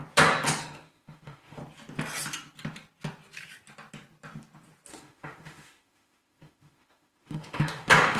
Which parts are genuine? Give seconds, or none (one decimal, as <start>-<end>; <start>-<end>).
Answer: 0.0-0.6; 1.6-4.9